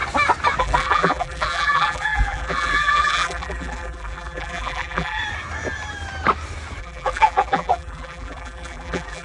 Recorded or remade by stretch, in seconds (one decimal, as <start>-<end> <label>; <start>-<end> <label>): 0.0-0.6 recorded; 0.6-5.2 remade; 5.2-6.8 recorded; 6.8-9.2 remade